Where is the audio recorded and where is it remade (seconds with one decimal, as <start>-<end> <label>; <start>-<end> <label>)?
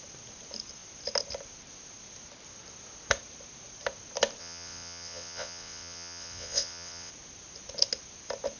0.0-4.4 recorded; 4.4-7.1 remade; 7.1-8.6 recorded